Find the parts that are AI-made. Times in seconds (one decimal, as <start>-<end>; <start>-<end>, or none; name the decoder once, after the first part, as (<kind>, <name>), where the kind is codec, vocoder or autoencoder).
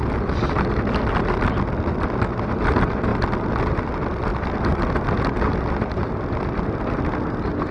none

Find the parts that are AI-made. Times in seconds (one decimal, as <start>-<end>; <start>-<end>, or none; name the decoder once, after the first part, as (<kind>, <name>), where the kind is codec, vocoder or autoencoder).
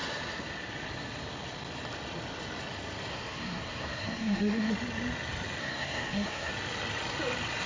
3.1-4.7 (codec, SNAC); 5.6-6.5